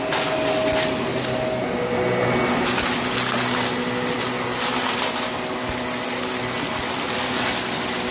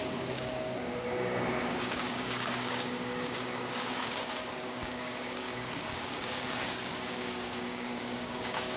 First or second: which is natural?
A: first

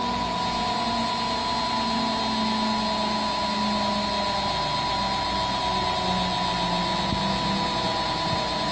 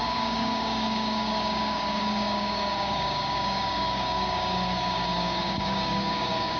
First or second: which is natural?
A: first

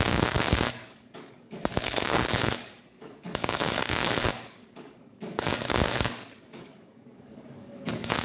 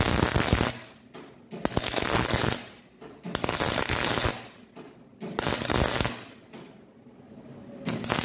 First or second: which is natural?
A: second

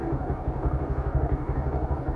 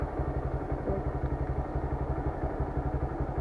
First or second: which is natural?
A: second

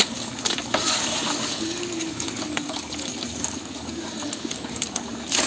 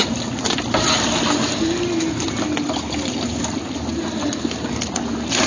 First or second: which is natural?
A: second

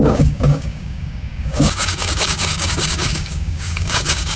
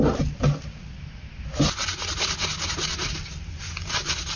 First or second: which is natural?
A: second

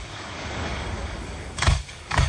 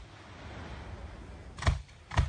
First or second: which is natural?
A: second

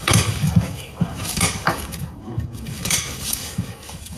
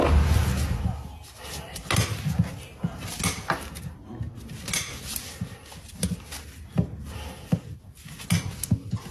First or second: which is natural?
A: second